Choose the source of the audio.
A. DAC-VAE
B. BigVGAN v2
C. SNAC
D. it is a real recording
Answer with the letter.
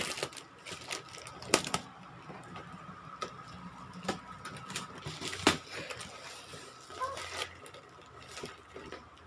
D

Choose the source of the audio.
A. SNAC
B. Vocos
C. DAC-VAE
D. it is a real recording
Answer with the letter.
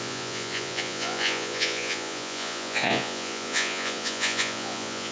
B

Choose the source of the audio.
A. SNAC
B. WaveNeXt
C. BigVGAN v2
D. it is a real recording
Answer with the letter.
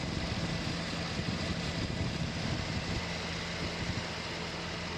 D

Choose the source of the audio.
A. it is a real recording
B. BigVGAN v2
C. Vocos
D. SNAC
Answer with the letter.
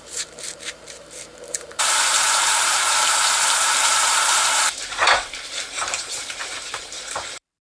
B